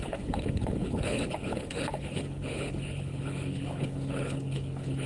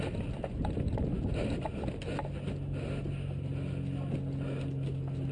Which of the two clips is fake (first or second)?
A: first